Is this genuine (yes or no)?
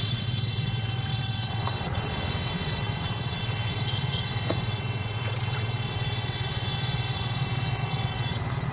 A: no